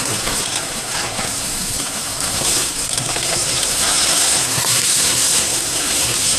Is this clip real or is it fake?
fake